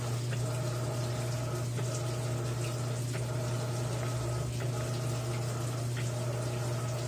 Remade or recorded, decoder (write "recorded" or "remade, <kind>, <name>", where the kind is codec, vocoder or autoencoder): recorded